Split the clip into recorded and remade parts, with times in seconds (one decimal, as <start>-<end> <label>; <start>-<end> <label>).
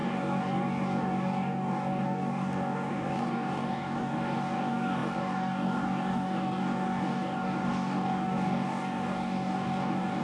0.0-10.2 remade